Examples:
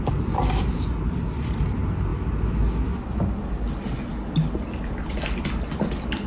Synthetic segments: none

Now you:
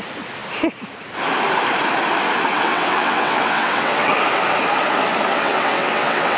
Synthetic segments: 2.5-4.1 (vocoder, WaveNeXt); 5.3-6.4

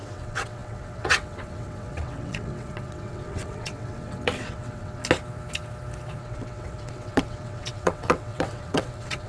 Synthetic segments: 0.0-5.0 (vocoder, WaveNeXt); 6.2-9.3